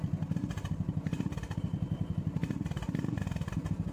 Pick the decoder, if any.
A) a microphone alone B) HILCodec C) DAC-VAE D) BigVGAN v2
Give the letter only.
A